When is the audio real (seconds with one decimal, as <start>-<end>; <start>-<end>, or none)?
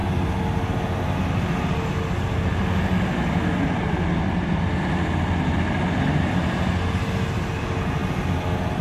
0.0-8.8